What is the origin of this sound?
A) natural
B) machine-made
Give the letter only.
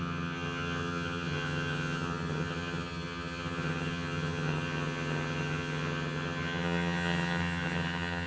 B